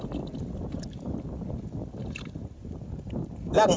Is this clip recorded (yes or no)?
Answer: yes